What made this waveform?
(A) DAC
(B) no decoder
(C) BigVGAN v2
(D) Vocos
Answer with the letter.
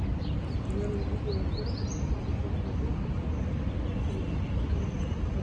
B